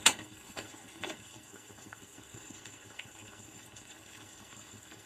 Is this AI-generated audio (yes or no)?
yes